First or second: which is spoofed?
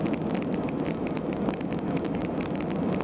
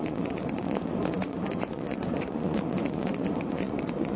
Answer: second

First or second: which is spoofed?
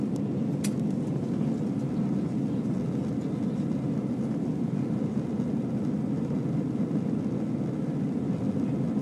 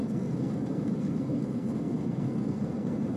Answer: second